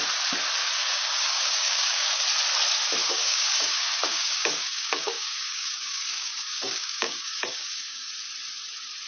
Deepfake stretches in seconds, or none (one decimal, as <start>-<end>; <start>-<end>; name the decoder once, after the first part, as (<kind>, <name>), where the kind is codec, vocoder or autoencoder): 0.6-2.2 (codec, DAC); 3.0-8.1